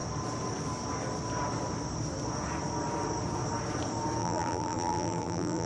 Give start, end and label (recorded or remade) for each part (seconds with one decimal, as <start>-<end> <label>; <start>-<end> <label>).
0.0-4.2 recorded; 4.2-5.7 remade